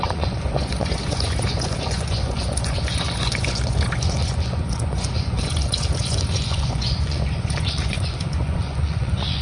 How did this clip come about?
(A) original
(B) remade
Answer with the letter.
B